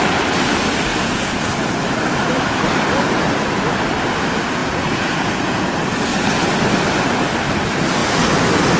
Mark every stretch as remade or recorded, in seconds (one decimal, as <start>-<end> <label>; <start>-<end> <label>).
0.0-0.9 recorded; 0.9-1.5 remade; 1.5-4.6 recorded; 4.6-5.8 remade; 5.8-8.8 recorded